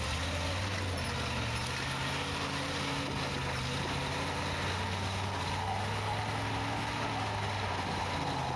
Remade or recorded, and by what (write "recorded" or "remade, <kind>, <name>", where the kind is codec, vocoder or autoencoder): recorded